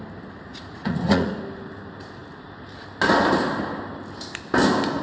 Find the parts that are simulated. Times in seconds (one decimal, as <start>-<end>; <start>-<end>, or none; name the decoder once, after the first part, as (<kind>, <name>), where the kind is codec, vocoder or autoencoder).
0.5-1.3 (vocoder, Vocos)